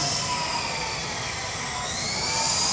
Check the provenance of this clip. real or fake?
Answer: real